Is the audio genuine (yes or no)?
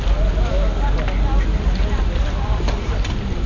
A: yes